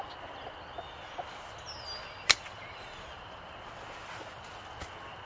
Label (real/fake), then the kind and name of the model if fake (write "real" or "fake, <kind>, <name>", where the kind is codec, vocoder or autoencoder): real